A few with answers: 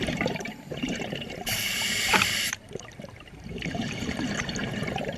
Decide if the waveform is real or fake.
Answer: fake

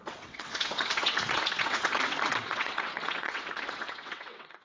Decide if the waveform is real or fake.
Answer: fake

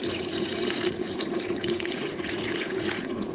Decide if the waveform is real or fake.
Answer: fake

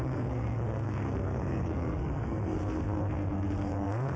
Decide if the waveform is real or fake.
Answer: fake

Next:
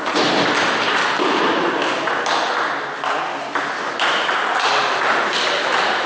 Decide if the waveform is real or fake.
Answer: real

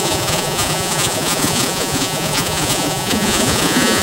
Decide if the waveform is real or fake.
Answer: fake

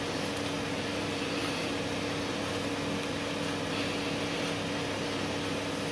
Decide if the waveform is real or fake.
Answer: real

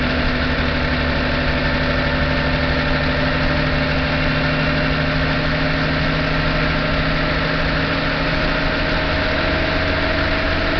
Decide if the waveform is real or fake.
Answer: real